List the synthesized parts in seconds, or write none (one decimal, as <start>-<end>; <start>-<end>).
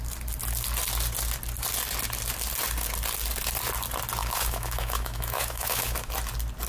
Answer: 4.2-6.1